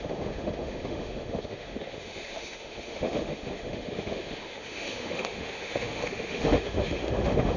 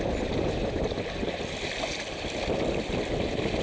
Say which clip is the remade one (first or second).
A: first